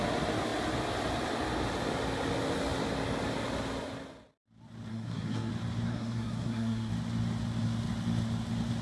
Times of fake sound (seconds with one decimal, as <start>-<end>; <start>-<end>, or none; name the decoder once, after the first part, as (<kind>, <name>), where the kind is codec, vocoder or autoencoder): 4.9-5.5 (codec, SNAC); 5.9-6.9